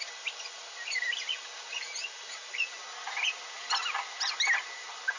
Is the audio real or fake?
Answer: real